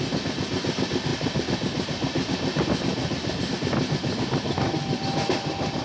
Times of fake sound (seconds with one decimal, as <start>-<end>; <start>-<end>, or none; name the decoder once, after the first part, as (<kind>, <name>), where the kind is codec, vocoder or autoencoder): none